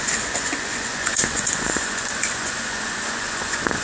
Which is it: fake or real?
fake